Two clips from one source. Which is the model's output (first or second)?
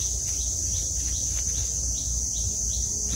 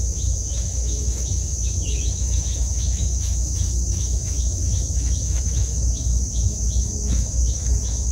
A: second